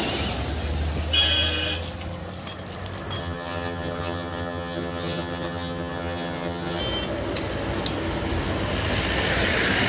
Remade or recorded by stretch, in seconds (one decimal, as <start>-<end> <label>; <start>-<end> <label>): 0.0-3.2 recorded; 3.2-6.8 remade; 6.8-9.9 recorded